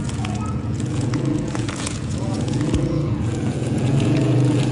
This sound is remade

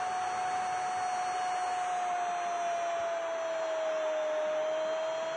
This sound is recorded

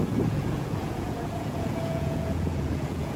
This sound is remade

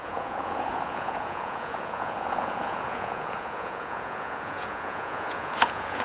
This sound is remade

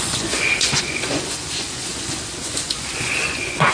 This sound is remade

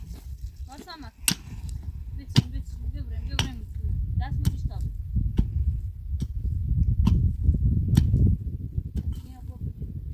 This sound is recorded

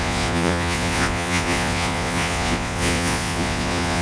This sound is remade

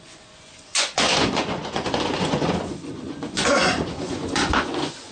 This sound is remade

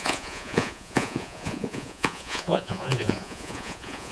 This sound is remade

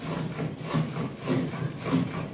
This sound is recorded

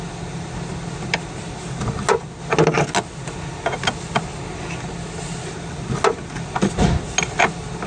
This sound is recorded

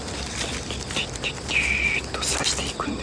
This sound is recorded